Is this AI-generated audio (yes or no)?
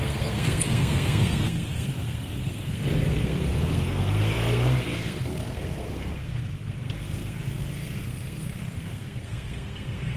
yes